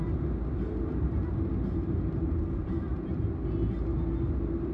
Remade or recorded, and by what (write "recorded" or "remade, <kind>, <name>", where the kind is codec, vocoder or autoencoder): recorded